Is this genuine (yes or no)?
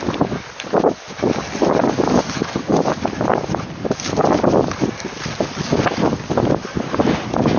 yes